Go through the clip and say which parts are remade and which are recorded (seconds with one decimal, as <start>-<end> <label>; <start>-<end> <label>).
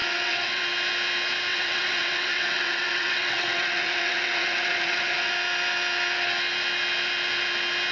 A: 0.0-0.6 remade; 0.6-1.5 recorded; 1.5-5.3 remade; 5.3-7.9 recorded